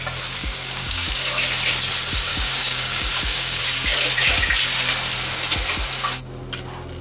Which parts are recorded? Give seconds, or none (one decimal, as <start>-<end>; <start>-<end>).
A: 0.0-0.4; 1.1-2.3; 3.6-7.0